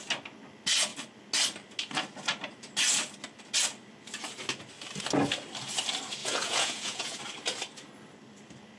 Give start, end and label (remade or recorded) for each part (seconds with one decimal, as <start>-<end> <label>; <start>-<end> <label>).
0.0-6.2 recorded; 6.2-7.2 remade; 7.2-8.8 recorded